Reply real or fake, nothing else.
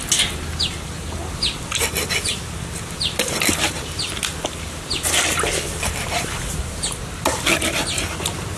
real